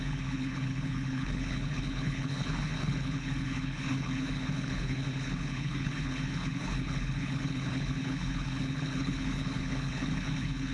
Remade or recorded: remade